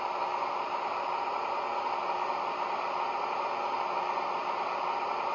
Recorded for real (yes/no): yes